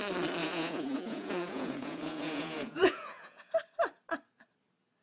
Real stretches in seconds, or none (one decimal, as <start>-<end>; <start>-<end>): 0.0-0.4; 3.4-5.0